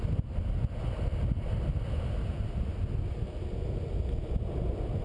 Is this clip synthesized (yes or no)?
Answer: no